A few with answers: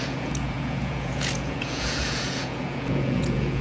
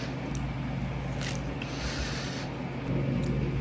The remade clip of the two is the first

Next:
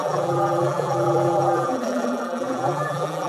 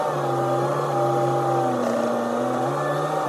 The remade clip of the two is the first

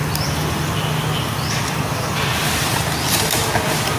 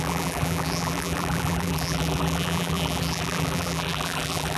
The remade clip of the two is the second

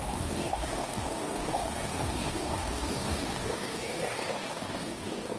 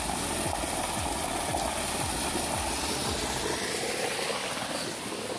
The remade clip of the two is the first